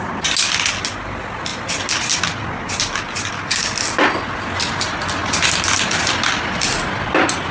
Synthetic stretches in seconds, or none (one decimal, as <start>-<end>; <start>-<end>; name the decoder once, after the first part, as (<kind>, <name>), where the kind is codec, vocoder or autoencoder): none